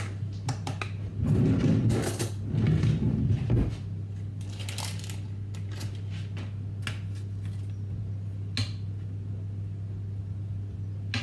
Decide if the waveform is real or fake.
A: real